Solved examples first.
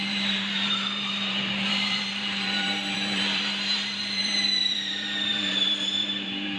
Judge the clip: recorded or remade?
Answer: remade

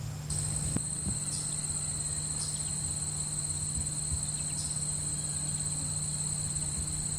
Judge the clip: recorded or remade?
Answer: recorded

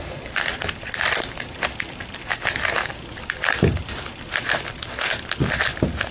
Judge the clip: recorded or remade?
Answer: recorded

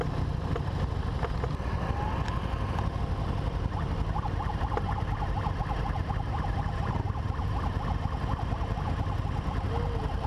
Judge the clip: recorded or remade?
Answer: recorded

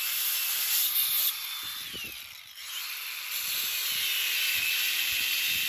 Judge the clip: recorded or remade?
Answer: remade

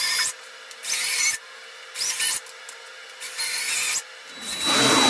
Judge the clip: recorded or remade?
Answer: recorded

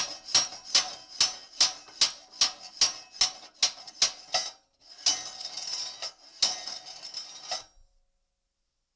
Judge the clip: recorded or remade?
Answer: recorded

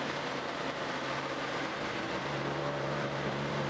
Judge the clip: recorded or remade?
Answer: remade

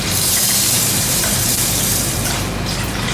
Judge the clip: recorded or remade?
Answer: remade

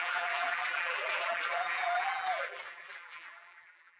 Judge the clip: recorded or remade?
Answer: remade